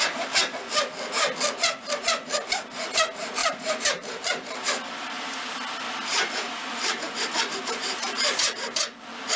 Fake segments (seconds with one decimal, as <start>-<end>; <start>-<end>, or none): 3.4-5.4; 6.1-8.8